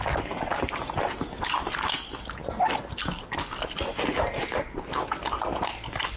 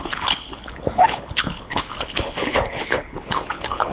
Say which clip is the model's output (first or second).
second